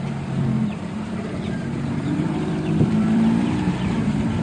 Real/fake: fake